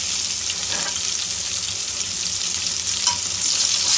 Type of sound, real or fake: real